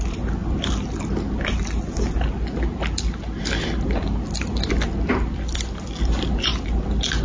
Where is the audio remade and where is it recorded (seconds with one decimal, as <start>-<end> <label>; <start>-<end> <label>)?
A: 0.0-7.2 recorded